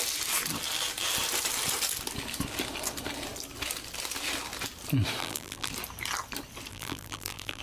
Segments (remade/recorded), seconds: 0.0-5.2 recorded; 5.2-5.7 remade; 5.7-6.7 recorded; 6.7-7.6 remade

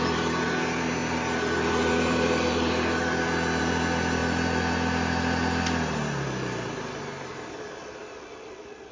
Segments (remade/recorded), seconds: 0.0-8.9 recorded

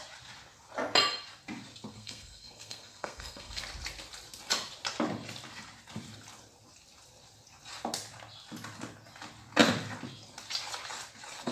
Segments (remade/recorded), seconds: 0.0-1.9 recorded; 1.9-3.6 remade; 3.6-11.5 recorded

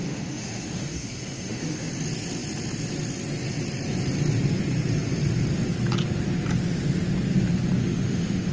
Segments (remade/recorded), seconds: 0.0-1.9 remade; 1.9-7.8 recorded; 7.8-8.5 remade

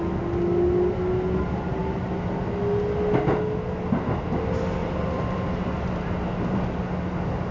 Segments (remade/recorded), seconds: 0.0-7.5 recorded

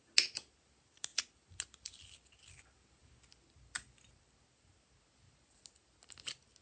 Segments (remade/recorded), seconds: 0.0-6.6 recorded